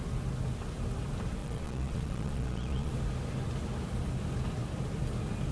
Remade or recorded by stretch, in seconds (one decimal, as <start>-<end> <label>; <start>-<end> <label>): 0.0-1.4 recorded; 1.4-2.9 remade; 2.9-5.5 recorded

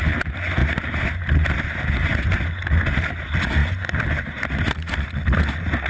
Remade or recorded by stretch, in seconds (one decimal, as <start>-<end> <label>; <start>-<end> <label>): 0.0-5.9 recorded

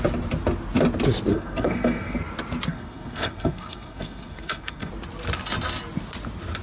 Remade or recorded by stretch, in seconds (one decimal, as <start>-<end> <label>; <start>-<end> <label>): 0.0-1.3 recorded; 1.3-2.2 remade; 2.2-2.7 recorded; 2.7-4.9 remade; 4.9-6.6 recorded